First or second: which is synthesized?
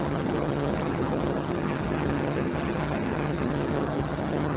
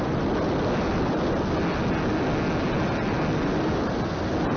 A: first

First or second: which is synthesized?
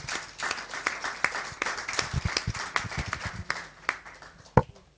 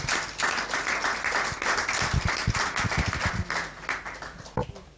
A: first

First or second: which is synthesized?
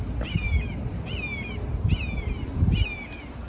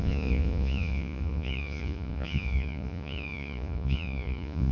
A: second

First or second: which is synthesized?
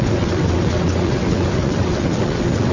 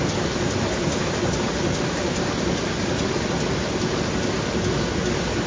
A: first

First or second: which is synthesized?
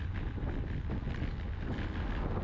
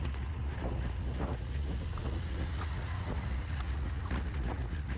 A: second